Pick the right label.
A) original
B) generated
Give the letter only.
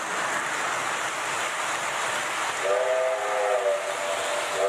A